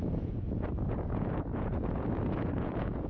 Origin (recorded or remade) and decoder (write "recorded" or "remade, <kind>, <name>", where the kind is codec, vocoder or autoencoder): remade, vocoder, Vocos